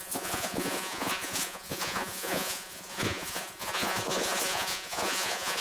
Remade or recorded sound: remade